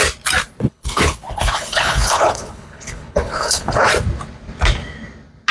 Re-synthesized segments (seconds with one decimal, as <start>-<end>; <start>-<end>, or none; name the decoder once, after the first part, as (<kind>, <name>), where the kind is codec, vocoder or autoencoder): 0.6-3.9 (codec, HILCodec)